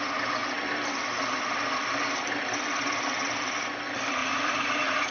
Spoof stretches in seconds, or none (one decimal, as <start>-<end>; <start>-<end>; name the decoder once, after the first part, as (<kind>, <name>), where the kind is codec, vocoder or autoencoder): 4.2-5.1 (vocoder, Vocos)